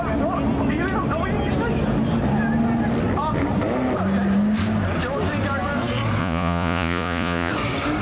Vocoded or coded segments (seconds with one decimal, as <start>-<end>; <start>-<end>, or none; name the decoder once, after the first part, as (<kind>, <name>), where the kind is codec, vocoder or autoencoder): 6.2-7.5 (vocoder, Vocos)